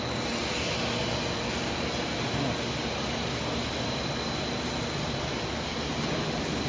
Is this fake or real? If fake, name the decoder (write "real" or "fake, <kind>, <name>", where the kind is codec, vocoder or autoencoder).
real